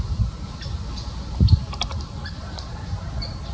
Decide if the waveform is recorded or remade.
recorded